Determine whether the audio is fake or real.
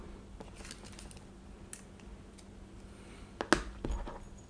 real